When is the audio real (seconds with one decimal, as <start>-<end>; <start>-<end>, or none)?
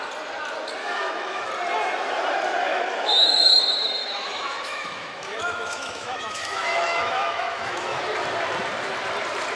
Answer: 0.0-0.8; 1.5-2.7; 3.6-4.0; 8.0-9.6